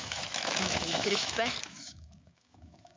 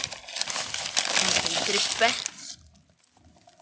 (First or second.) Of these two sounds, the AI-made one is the first